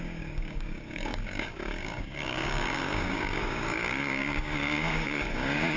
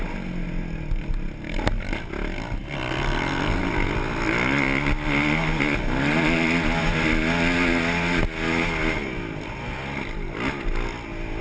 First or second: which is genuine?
second